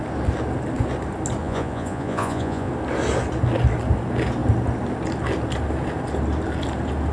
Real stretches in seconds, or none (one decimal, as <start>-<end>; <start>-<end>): 0.0-1.4; 2.7-7.1

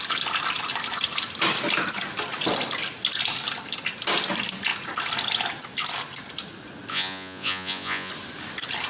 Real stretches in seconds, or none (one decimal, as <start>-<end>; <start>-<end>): 0.0-6.9; 8.1-8.9

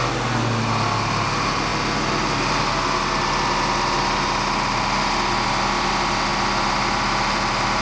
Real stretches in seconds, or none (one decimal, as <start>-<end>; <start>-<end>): 0.0-7.8

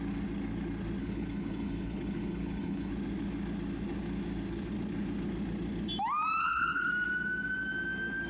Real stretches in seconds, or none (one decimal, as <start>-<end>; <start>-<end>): 0.0-1.0; 2.9-6.4; 6.9-8.3